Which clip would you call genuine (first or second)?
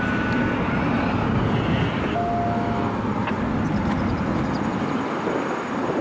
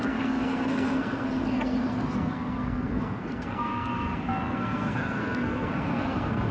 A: first